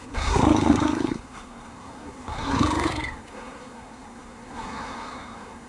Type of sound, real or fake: fake